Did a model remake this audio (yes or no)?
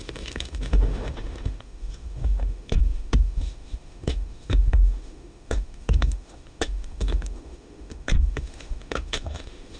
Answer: yes